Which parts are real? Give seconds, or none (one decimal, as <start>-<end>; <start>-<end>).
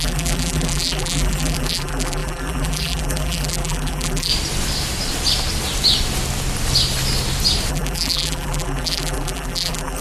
4.3-7.7